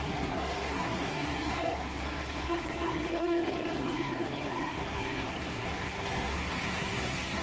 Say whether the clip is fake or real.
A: fake